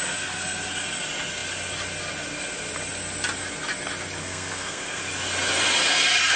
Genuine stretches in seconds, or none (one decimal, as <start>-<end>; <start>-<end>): 0.0-4.2; 5.0-6.4